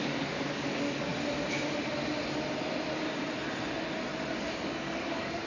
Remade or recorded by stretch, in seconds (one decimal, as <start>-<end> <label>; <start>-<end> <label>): 0.0-1.1 remade; 1.1-4.4 recorded; 4.4-5.5 remade